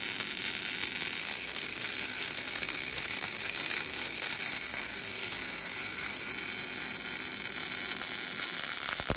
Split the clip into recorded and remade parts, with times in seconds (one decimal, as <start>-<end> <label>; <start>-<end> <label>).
0.0-1.2 recorded; 1.2-6.3 remade; 6.3-9.2 recorded